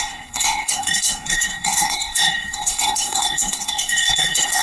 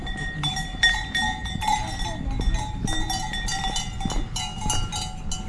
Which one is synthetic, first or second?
first